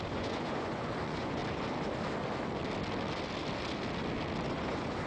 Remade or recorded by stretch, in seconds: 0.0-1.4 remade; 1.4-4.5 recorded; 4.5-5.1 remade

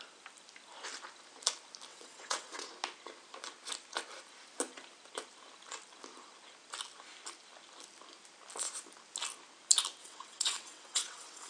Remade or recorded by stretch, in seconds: 0.0-1.9 recorded; 1.9-2.7 remade; 2.7-10.0 recorded; 10.0-11.5 remade

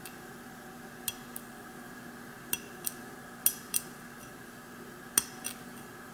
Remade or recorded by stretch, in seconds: 0.0-6.1 recorded

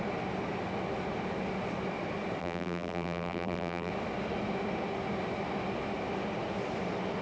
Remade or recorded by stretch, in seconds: 0.0-2.4 recorded; 2.4-3.9 remade; 3.9-7.2 recorded

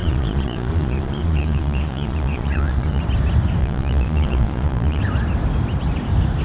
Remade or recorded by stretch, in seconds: 0.0-3.0 remade; 3.0-3.6 recorded; 3.6-5.0 remade; 5.0-6.4 recorded

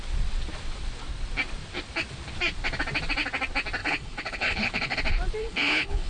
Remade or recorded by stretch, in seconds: 0.0-3.8 recorded; 3.8-5.0 remade; 5.0-5.4 recorded; 5.4-6.1 remade

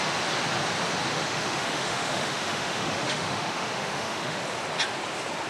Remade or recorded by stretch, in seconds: 0.0-1.1 recorded; 1.1-4.4 remade; 4.4-5.5 recorded